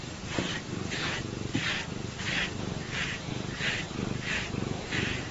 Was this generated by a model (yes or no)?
no